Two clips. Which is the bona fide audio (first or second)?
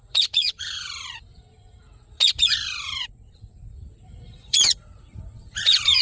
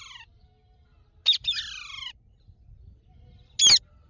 second